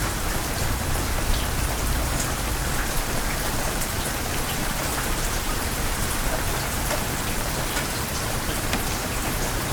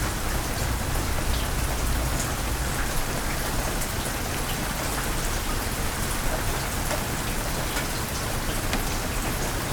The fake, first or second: first